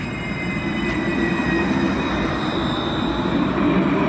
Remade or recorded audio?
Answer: recorded